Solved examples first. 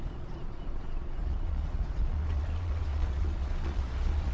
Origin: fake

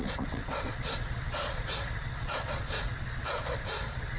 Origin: fake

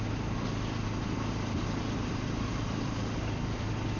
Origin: real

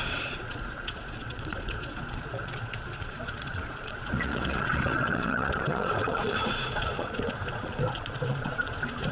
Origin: fake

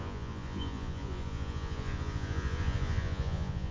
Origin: fake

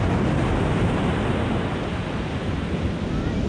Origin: real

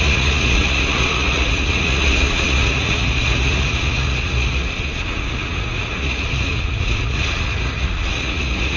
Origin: fake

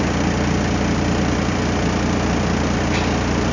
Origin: real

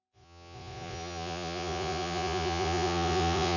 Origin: fake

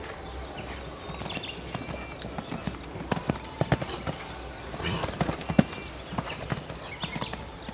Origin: real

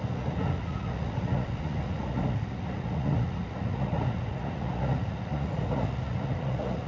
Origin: fake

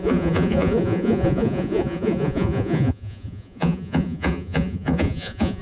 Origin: fake